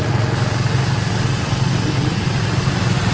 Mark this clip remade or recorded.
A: recorded